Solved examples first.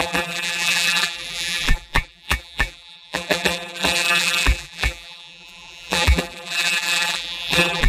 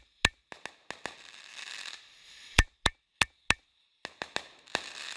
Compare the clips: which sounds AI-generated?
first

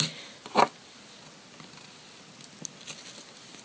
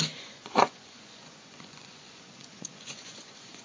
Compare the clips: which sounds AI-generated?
second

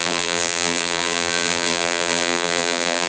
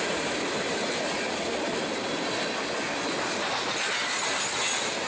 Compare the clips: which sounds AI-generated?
first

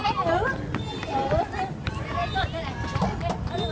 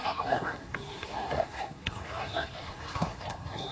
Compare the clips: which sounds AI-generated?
second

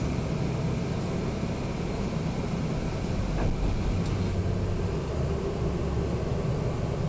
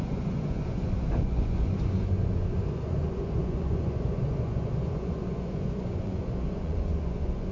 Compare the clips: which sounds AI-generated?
second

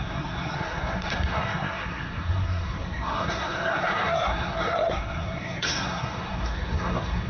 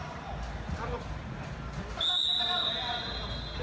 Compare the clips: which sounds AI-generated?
first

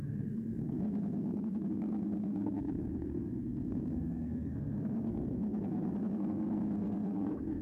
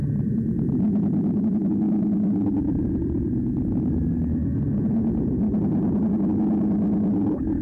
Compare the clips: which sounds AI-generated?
first